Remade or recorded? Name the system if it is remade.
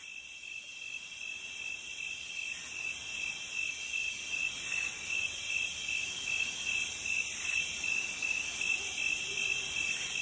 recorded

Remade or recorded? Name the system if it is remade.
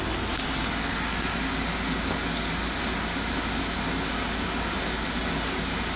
recorded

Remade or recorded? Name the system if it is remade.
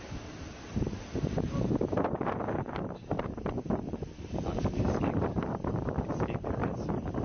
remade, vocoder, BigVGAN v2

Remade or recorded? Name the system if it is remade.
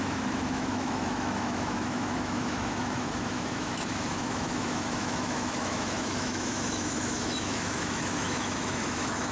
remade, autoencoder, DAC-VAE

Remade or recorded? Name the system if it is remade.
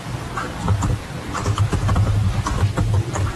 recorded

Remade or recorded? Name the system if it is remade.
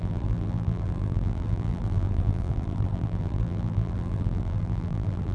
remade, vocoder, BigVGAN v2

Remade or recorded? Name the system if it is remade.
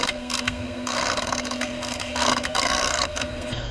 remade, codec, SNAC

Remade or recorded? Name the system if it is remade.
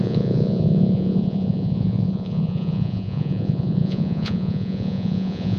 remade, vocoder, Vocos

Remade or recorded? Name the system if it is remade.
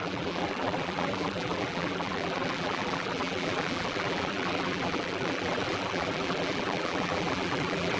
remade, vocoder, BigVGAN v2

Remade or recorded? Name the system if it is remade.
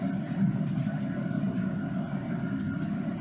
recorded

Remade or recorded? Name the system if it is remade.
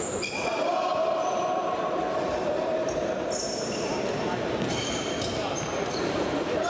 remade, vocoder, BigVGAN v2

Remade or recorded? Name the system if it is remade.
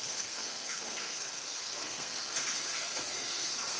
remade, codec, SNAC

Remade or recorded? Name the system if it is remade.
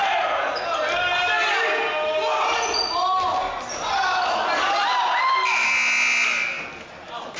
recorded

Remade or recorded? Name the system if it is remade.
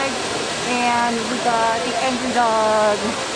recorded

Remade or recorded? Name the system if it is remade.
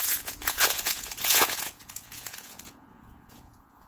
remade, vocoder, Vocos